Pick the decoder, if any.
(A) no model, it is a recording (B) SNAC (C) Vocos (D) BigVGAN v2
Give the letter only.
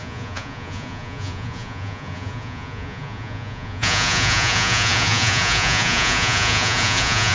C